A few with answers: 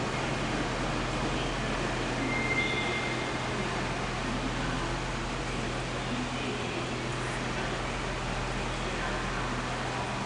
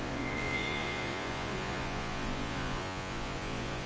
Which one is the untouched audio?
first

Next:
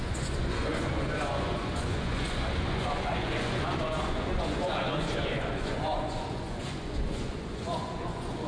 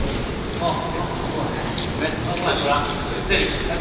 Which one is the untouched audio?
second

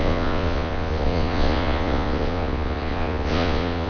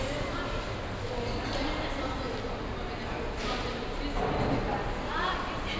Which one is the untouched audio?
second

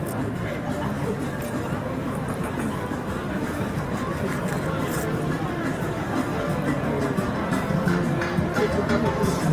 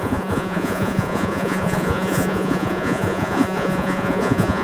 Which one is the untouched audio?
first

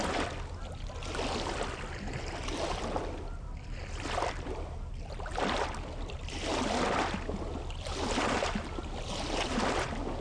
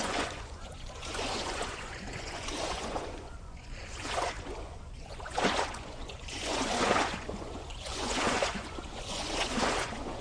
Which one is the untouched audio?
first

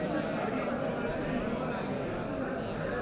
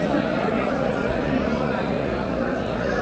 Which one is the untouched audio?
first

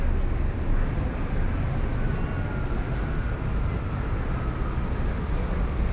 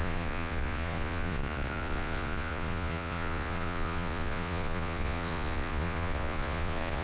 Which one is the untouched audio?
first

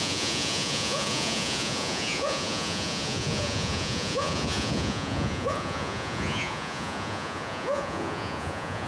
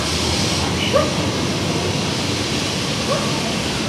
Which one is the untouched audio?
second